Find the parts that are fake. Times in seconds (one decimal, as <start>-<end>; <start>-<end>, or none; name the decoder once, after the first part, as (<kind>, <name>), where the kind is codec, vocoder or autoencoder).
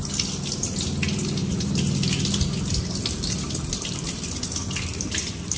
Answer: none